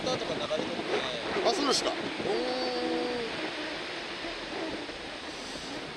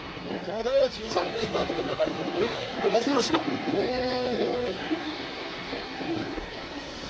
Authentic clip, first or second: first